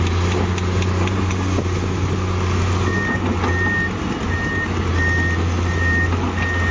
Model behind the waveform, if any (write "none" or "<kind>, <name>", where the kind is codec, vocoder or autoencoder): none